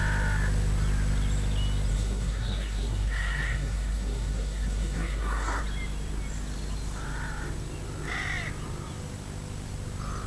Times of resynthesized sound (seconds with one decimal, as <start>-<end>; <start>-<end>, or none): 1.9-5.6